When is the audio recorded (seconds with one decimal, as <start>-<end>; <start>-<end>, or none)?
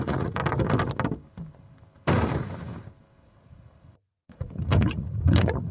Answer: 0.4-3.2